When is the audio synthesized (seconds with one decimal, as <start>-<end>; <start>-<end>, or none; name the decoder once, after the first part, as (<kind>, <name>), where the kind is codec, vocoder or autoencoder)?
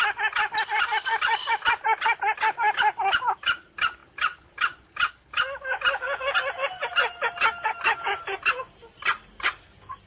none